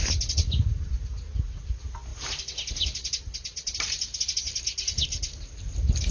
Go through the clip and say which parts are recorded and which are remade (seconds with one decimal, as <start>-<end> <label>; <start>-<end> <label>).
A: 0.0-6.1 recorded

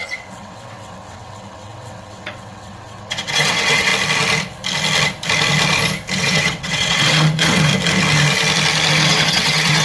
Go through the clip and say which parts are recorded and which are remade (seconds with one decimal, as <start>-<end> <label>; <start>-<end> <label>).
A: 0.0-3.9 remade; 3.9-6.2 recorded; 6.2-7.7 remade; 7.7-8.9 recorded; 8.9-9.8 remade

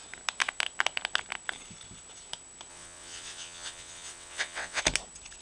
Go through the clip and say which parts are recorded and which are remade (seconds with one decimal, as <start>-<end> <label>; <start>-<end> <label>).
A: 0.0-2.7 recorded; 2.7-4.8 remade; 4.8-5.4 recorded